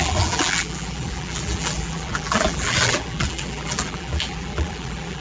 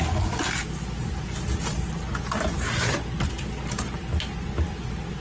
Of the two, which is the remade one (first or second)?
first